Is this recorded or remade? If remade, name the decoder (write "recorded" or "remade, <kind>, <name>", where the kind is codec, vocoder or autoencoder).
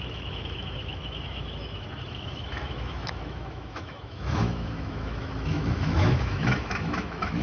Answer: remade, autoencoder, DAC-VAE